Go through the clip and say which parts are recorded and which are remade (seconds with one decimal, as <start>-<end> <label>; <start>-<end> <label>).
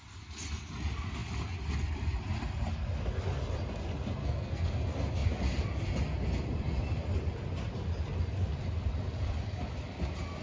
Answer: 0.0-4.2 recorded; 4.2-4.7 remade; 4.7-10.4 recorded